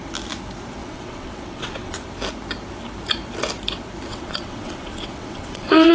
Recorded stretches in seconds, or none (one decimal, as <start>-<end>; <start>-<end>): 0.0-0.8; 2.1-4.1